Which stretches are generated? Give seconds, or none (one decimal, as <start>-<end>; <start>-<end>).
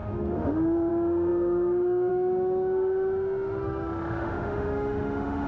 0.0-5.5